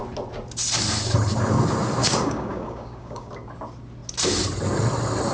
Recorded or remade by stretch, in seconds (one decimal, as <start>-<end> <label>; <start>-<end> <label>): 0.0-2.0 recorded; 2.0-3.3 remade; 3.3-5.3 recorded